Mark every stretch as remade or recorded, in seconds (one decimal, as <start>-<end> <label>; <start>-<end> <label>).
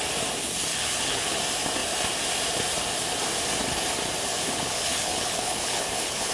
0.0-0.7 recorded; 0.7-1.4 remade; 1.4-4.3 recorded; 4.3-6.3 remade